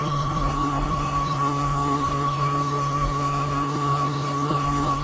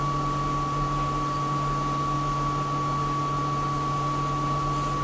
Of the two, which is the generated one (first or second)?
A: first